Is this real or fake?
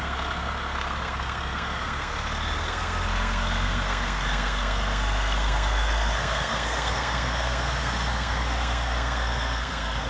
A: fake